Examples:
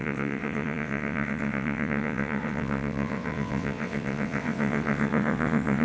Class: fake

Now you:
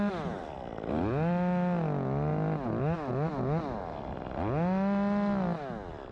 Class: real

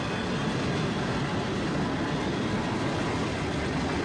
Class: real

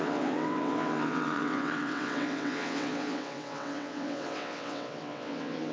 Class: fake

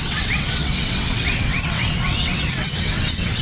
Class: fake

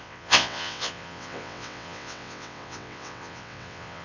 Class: fake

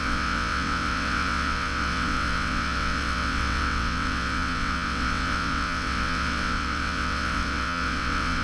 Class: fake